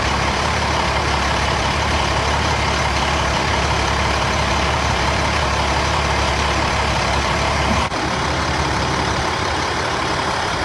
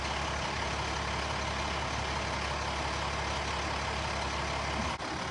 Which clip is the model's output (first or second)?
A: first